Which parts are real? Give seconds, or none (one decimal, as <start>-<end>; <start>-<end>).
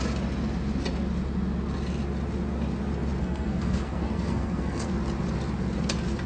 0.0-3.2; 4.9-6.3